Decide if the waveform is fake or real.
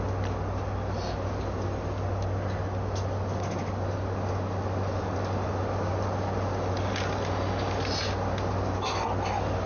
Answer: real